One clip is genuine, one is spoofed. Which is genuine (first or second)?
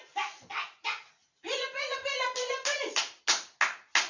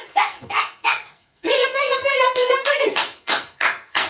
first